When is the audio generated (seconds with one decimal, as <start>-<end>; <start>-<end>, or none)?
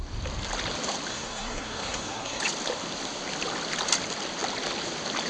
1.1-2.4